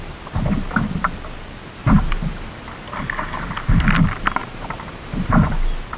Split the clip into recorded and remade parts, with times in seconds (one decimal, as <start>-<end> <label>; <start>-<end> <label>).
0.0-1.8 recorded; 1.8-2.5 remade; 2.5-4.4 recorded; 4.4-5.3 remade; 5.3-6.0 recorded